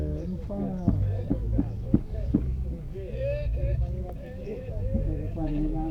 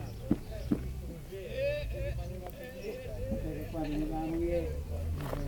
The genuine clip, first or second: second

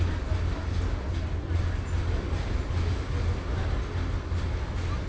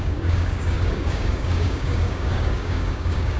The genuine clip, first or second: first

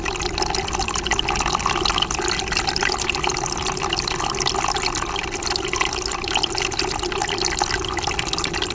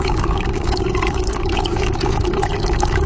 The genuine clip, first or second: first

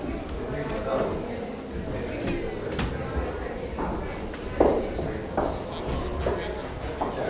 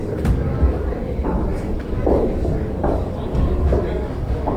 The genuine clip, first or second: first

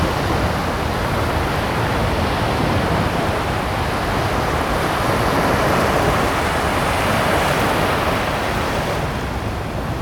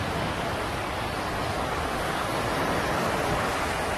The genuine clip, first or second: first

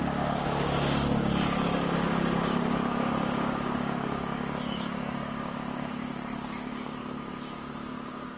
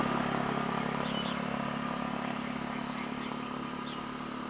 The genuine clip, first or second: second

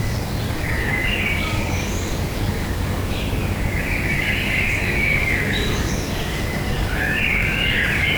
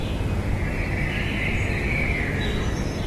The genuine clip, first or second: second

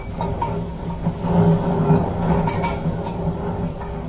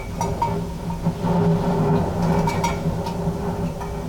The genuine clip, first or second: second